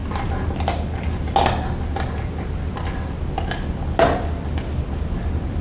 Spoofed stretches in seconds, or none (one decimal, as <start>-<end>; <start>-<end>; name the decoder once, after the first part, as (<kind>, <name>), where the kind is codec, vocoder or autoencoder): none